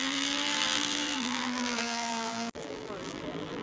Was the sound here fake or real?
fake